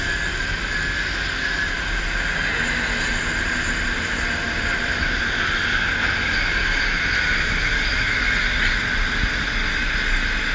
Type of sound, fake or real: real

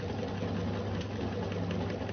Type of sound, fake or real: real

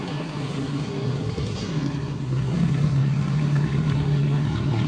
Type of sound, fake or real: fake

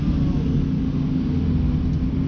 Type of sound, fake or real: real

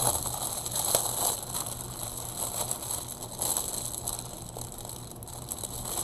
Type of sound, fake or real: real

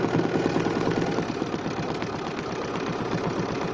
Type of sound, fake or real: real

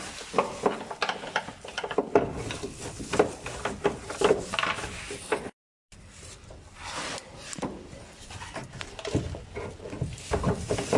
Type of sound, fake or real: fake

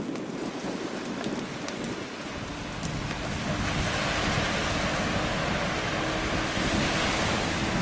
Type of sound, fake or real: real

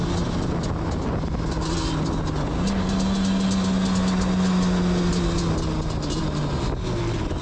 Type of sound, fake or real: real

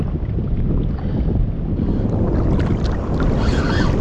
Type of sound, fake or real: real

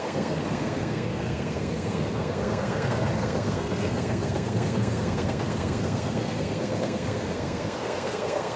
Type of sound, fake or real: fake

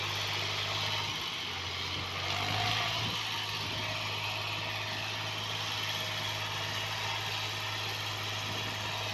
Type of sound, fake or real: real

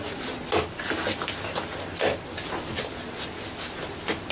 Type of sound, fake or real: real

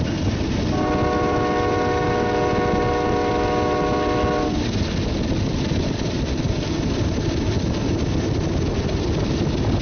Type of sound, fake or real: real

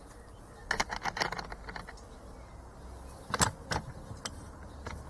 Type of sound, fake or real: real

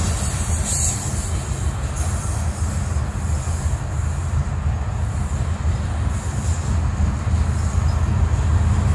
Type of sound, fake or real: real